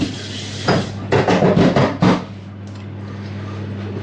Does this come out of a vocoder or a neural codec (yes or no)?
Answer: no